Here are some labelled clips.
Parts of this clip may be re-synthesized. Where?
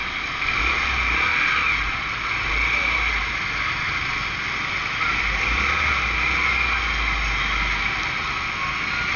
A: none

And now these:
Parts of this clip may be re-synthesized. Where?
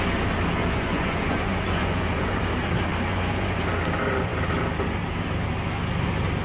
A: 0.6-2.4 (vocoder, Vocos); 3.1-3.6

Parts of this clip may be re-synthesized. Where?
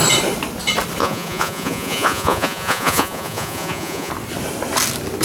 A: 1.0-4.1 (vocoder, Vocos)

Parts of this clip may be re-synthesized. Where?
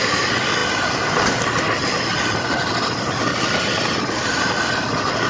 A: none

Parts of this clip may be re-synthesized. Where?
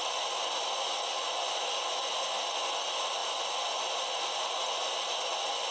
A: none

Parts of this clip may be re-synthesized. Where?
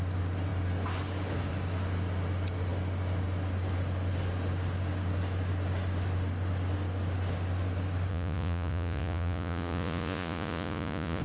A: 8.1-11.2 (vocoder, Vocos)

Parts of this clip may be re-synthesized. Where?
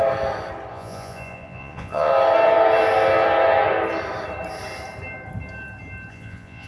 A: 0.7-2.1 (vocoder, Vocos); 6.1-6.7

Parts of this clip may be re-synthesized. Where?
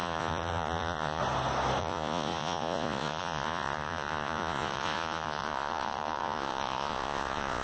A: 0.0-1.2 (vocoder, Vocos); 1.8-7.6